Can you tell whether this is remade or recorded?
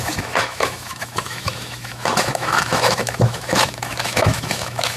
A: remade